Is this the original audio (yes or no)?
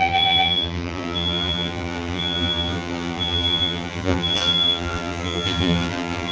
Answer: no